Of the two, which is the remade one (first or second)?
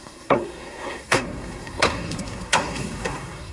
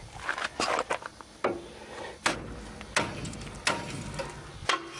first